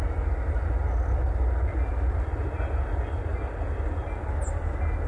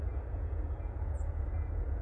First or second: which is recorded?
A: first